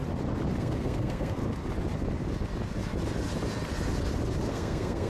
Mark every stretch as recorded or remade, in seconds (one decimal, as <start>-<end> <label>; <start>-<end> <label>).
0.0-0.6 recorded; 0.6-1.4 remade; 1.4-4.5 recorded; 4.5-5.1 remade